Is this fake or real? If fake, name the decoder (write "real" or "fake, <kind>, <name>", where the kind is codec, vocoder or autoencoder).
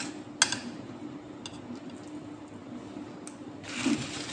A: real